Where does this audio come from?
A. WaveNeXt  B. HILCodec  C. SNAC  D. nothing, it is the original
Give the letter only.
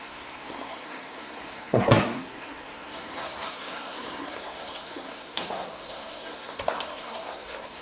C